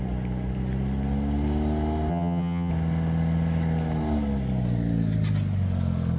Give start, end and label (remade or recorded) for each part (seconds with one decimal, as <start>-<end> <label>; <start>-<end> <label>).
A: 0.0-2.1 recorded; 2.1-2.7 remade; 2.7-6.2 recorded